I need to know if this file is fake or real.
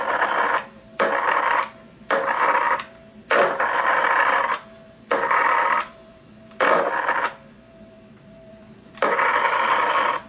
fake